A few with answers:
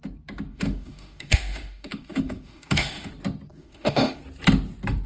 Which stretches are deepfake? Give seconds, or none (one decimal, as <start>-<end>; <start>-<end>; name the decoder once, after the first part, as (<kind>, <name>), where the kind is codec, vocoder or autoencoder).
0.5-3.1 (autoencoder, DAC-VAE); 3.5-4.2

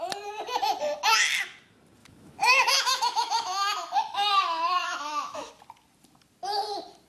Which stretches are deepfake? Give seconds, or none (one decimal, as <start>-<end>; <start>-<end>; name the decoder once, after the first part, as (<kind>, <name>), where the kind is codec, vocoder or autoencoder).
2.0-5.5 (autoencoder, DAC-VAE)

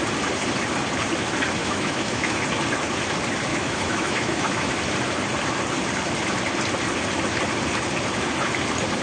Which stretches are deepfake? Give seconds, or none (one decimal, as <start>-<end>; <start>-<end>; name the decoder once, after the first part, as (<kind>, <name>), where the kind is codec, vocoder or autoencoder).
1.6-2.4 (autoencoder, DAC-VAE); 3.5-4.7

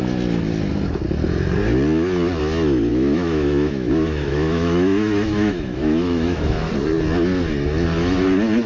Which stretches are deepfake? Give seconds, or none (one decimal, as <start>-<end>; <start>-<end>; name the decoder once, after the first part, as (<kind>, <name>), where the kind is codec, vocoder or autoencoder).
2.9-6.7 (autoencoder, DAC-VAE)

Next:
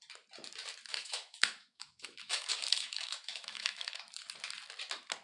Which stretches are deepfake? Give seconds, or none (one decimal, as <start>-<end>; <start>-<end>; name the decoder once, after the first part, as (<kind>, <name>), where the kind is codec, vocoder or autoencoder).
0.9-4.0 (autoencoder, DAC-VAE)